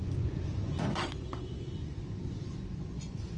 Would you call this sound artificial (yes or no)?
yes